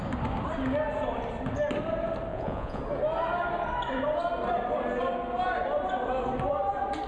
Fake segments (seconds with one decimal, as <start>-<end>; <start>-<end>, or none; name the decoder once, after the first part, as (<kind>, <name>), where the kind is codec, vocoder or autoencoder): 2.3-2.8 (vocoder, Vocos)

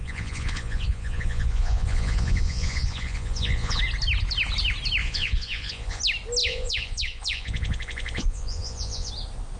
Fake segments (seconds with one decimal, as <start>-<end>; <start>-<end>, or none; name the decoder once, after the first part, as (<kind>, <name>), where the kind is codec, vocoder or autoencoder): 0.0-3.8 (vocoder, Vocos); 5.0-6.0; 6.4-9.1

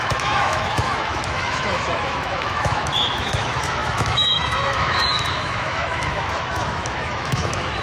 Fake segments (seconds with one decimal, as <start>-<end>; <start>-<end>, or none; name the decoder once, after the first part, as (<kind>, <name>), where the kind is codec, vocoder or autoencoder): 0.0-7.8 (autoencoder, DAC-VAE)

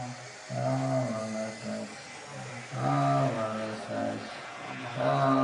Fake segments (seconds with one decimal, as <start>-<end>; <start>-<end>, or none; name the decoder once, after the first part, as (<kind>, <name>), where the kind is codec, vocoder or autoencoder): 4.0-4.9 (vocoder, Vocos)

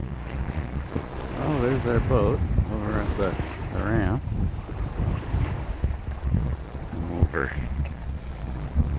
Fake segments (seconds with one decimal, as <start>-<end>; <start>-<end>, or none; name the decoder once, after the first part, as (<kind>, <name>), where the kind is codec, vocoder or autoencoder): 0.0-1.3 (vocoder, Vocos); 6.1-6.8; 7.2-9.0

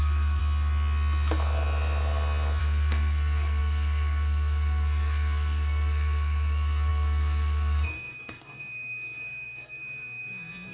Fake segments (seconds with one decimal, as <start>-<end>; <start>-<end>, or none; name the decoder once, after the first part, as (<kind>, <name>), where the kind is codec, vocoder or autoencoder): 0.0-0.4 (codec, SNAC); 2.6-10.7

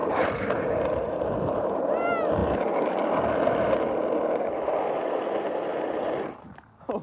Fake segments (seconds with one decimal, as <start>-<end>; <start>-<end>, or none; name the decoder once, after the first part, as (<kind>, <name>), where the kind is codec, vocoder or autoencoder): 0.0-1.8 (vocoder, BigVGAN v2); 5.7-6.3

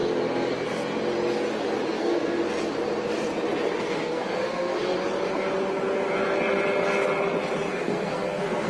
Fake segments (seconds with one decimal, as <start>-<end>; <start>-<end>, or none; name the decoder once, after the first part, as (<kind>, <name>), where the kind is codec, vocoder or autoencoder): 2.0-2.4 (codec, SNAC); 3.8-4.9; 7.7-8.7